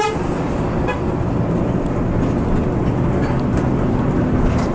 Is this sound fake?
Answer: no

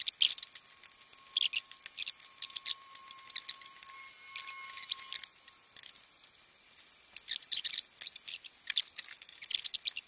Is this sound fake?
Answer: no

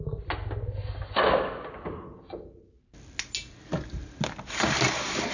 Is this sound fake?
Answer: no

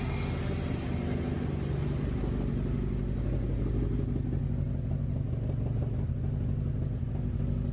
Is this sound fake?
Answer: no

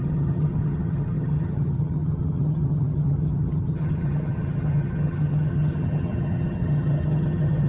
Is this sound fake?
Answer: yes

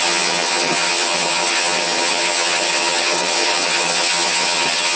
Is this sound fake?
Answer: yes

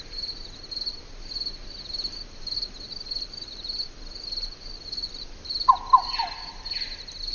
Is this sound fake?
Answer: no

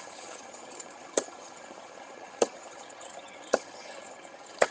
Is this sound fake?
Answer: yes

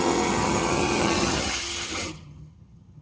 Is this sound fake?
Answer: yes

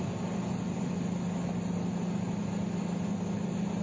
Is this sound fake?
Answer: no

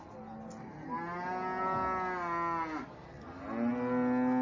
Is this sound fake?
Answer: no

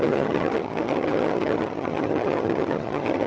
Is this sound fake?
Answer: yes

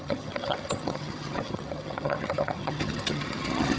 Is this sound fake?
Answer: yes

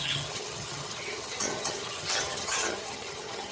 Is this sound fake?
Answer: yes